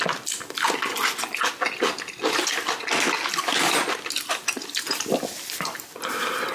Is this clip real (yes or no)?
yes